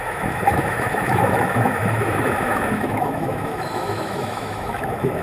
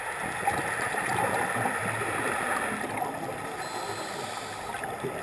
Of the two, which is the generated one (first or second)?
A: first